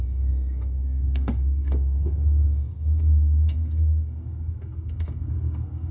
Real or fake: fake